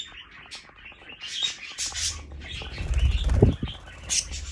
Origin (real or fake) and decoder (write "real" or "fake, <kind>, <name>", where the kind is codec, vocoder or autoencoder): real